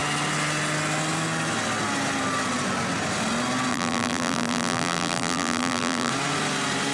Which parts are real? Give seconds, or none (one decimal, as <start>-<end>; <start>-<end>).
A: 0.0-3.7; 6.1-6.9